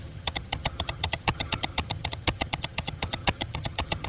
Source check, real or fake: fake